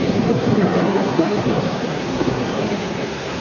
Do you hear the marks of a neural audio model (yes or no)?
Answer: yes